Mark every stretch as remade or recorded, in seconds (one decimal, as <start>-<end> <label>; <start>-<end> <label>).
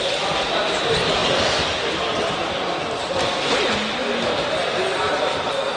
0.0-5.8 recorded